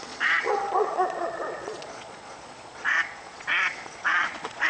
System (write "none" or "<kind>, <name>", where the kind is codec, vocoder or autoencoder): vocoder, Vocos